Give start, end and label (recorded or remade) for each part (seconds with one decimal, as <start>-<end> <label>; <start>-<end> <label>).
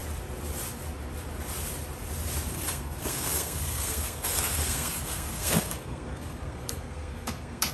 0.0-2.5 recorded; 2.5-7.7 remade